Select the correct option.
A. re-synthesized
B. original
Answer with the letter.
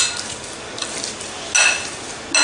B